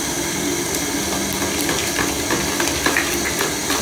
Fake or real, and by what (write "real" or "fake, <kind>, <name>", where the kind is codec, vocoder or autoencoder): real